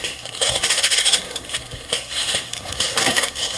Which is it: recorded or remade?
remade